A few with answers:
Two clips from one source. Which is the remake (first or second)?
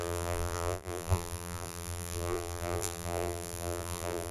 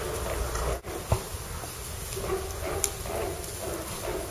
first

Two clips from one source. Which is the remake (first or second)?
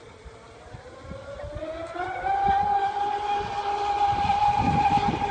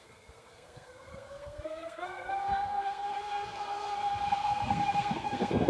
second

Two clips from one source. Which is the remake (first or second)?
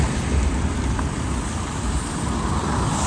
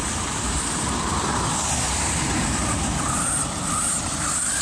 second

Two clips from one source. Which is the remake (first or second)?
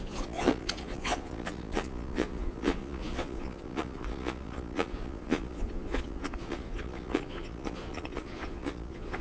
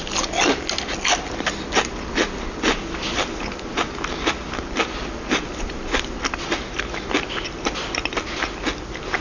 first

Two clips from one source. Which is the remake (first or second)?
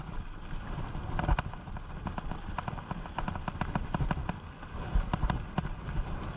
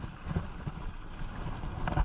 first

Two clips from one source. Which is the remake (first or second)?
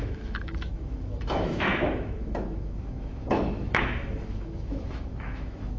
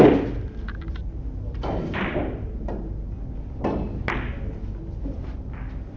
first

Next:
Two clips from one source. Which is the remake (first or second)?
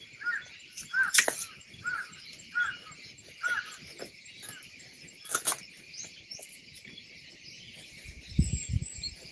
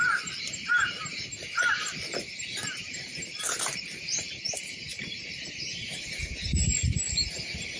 second